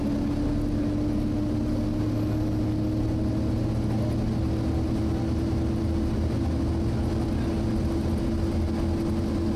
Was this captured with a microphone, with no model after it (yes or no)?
yes